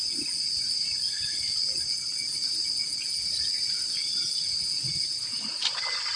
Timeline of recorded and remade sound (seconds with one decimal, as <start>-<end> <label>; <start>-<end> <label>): 0.0-6.2 recorded